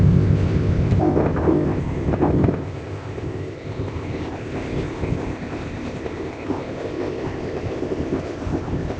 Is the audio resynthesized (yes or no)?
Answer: yes